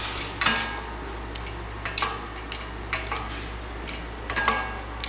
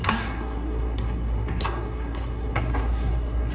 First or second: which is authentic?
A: first